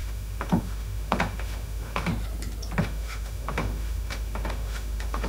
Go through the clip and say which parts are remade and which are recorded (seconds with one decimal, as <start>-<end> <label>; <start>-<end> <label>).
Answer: 0.0-2.1 remade; 2.1-2.8 recorded; 2.8-5.3 remade